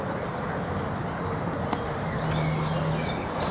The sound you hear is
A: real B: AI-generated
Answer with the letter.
A